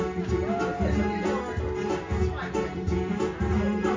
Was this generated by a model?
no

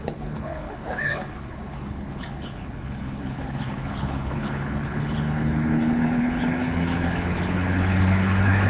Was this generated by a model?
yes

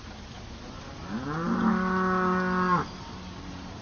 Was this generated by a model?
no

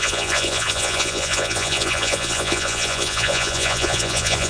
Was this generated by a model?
yes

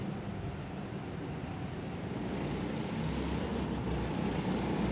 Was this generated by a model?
no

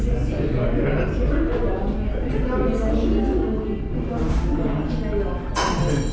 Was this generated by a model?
no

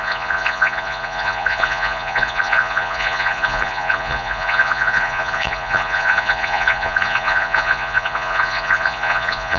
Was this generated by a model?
yes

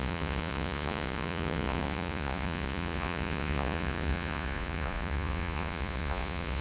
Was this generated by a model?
yes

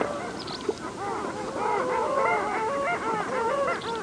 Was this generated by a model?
no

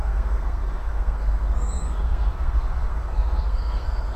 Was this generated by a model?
yes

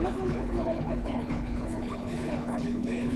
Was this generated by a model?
yes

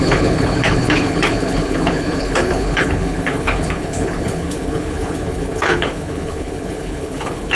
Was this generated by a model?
yes